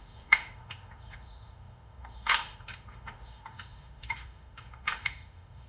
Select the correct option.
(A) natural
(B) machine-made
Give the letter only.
B